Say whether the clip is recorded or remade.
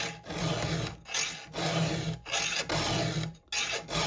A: recorded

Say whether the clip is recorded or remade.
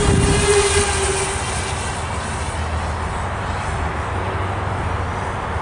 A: recorded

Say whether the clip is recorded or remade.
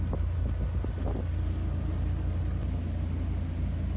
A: recorded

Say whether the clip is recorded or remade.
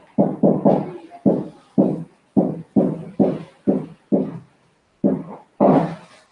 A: recorded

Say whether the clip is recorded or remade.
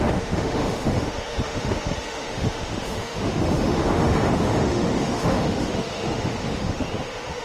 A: remade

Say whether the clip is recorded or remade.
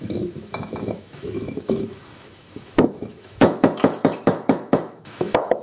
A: remade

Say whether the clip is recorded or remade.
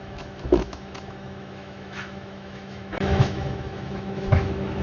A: remade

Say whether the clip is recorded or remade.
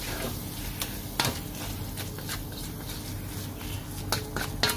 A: recorded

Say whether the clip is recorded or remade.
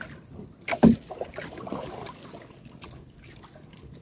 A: recorded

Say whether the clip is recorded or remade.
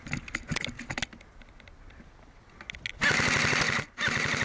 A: recorded